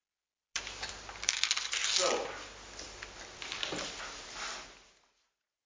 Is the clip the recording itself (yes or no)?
yes